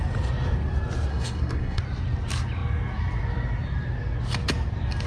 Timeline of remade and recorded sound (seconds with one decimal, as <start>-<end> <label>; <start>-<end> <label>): 0.0-1.1 recorded; 1.1-1.8 remade; 1.8-5.1 recorded